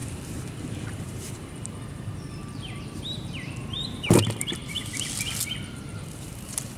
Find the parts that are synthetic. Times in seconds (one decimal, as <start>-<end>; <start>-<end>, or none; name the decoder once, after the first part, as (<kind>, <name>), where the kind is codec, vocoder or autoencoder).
0.0-4.6 (vocoder, BigVGAN v2); 5.5-6.8